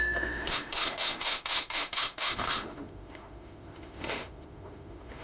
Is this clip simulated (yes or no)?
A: yes